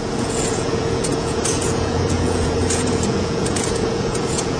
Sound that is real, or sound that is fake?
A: fake